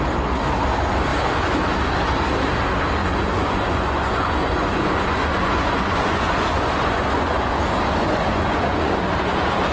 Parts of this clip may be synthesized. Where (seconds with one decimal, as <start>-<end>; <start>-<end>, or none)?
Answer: 3.0-7.6; 8.0-9.2